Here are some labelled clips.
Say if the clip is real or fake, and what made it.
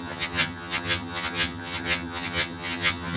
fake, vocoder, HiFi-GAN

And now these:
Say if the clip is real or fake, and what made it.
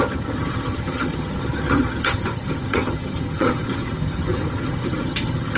fake, vocoder, HiFi-GAN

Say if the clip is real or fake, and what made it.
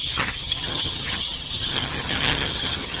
fake, vocoder, HiFi-GAN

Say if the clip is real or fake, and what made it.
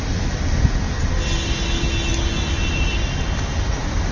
real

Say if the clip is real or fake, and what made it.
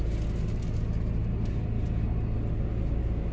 real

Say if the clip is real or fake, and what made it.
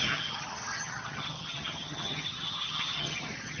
fake, vocoder, HiFi-GAN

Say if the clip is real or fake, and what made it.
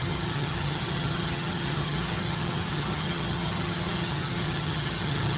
fake, vocoder, HiFi-GAN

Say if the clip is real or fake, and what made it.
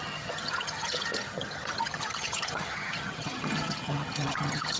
fake, vocoder, HiFi-GAN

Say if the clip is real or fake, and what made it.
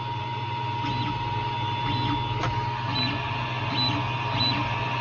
real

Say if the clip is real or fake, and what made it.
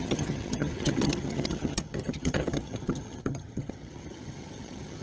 fake, vocoder, HiFi-GAN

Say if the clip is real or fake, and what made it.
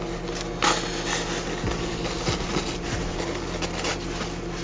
real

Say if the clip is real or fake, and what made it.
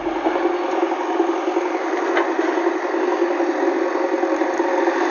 real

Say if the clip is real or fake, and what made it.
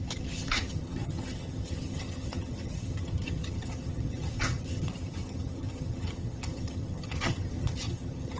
fake, vocoder, HiFi-GAN